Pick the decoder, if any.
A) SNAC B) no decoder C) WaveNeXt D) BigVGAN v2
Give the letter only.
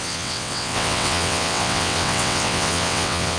C